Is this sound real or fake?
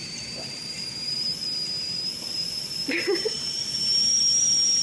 real